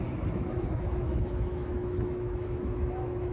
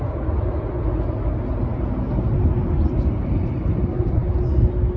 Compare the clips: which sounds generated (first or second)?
first